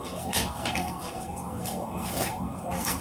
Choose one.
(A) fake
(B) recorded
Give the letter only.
A